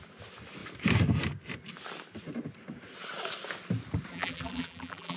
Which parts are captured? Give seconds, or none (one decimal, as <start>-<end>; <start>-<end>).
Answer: 0.0-4.1